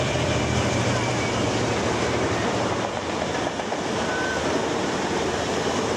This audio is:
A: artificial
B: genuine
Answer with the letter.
A